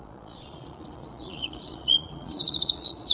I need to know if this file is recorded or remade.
remade